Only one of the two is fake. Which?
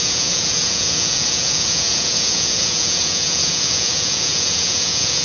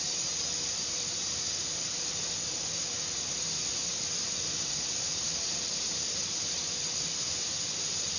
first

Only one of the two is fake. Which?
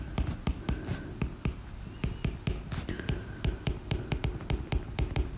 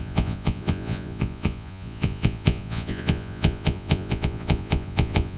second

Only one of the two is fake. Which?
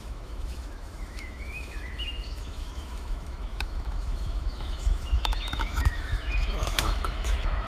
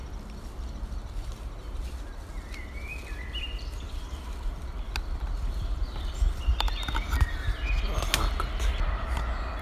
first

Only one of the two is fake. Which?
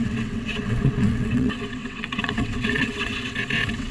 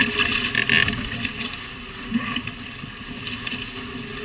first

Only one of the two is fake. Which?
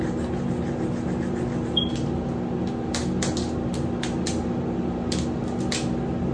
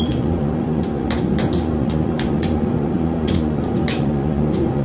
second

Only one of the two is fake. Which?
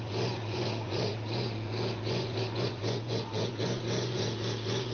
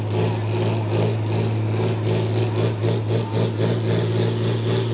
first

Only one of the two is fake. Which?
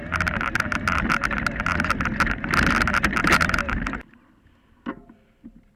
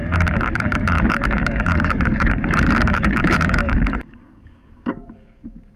second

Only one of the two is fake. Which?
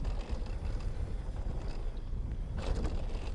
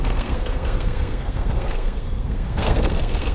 second